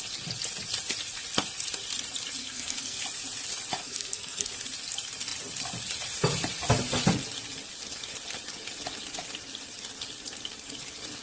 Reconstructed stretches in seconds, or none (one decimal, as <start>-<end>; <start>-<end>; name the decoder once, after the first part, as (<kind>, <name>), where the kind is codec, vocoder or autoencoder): 2.4-3.0 (codec, SNAC); 3.8-4.5